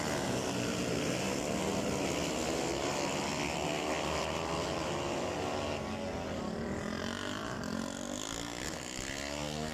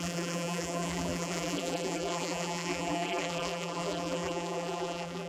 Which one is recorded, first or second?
first